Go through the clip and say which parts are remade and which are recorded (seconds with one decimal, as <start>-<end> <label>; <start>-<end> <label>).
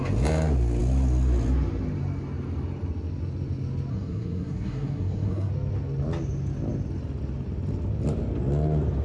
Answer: 0.0-3.9 recorded; 3.9-5.5 remade; 5.5-9.0 recorded